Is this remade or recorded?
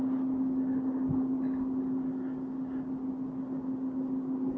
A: recorded